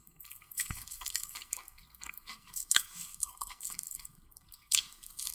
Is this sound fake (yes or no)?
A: yes